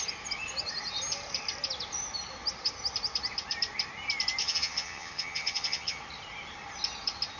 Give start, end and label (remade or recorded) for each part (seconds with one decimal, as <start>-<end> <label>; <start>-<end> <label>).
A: 0.0-4.4 recorded; 4.4-6.0 remade; 6.0-7.4 recorded